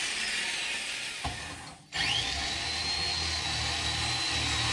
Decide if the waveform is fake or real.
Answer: real